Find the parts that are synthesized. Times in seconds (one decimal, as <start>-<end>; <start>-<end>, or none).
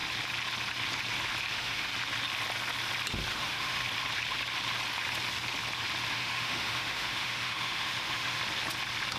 1.5-1.9; 3.3-3.8; 6.1-8.4